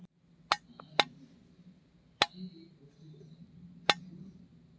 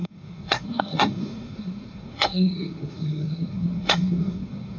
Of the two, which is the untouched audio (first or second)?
first